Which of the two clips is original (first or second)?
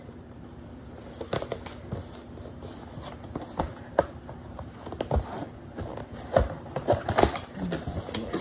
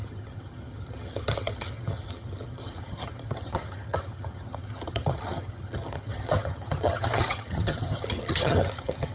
first